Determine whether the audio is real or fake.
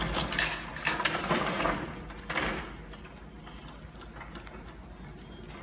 real